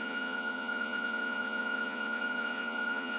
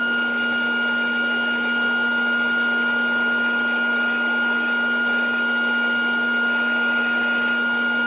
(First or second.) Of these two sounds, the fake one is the first